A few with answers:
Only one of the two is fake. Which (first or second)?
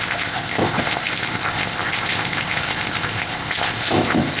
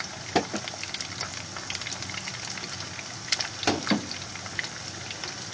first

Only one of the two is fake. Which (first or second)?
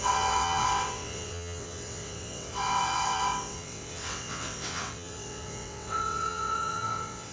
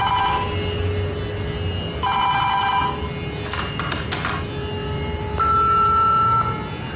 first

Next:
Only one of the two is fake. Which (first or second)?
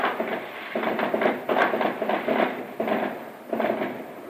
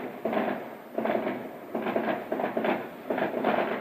first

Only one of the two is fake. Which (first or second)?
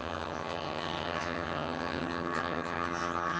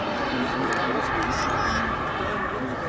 first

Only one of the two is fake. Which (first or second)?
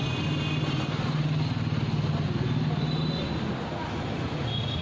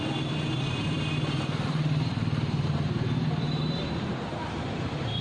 second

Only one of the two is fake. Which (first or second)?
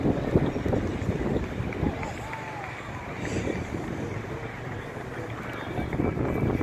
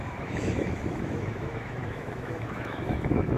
second